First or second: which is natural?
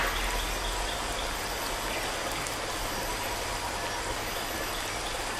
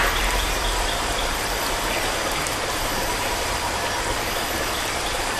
first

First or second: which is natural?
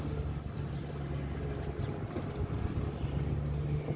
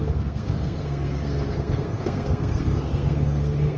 first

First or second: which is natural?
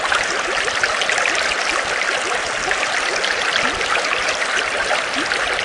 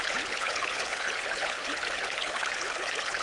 first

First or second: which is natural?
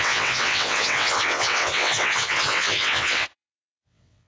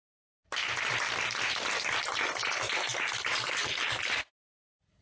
second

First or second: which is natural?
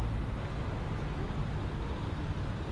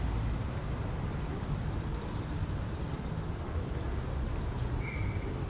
first